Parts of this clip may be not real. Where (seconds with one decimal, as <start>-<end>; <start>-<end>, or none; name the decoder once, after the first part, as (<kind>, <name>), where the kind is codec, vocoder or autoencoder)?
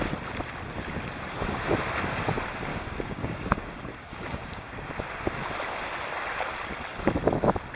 2.7-4.9 (codec, DAC)